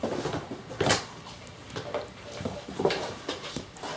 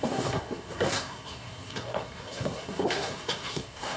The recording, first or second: first